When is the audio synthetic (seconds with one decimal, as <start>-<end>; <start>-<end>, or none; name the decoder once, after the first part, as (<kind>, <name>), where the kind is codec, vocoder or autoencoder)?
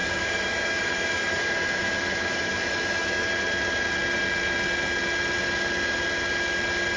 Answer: 0.0-3.2 (autoencoder, DAC-VAE)